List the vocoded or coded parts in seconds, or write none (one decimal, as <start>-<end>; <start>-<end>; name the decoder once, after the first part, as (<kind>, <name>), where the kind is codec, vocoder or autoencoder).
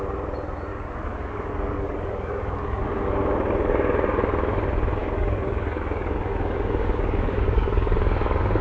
0.7-2.8 (codec, DAC); 5.0-8.6